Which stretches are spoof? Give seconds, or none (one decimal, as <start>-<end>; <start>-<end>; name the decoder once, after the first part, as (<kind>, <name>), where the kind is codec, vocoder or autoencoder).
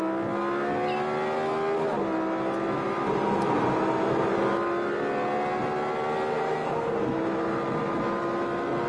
6.3-7.2 (codec, SNAC)